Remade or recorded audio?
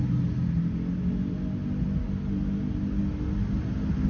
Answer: recorded